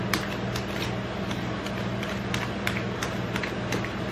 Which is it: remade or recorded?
recorded